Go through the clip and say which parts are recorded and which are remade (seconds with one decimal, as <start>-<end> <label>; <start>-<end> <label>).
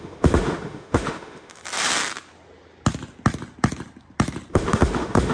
0.0-1.6 remade; 1.6-4.5 recorded; 4.5-5.3 remade